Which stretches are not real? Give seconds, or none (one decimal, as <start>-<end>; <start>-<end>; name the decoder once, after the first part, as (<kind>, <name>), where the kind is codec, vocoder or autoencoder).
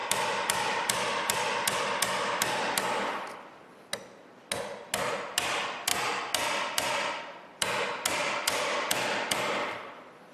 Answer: none